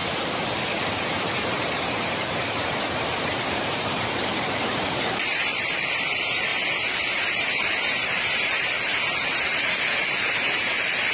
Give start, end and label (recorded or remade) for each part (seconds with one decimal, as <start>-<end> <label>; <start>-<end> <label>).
0.0-0.9 recorded; 0.9-6.5 remade; 6.5-7.3 recorded; 7.3-11.1 remade